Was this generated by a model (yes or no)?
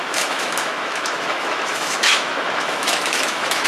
yes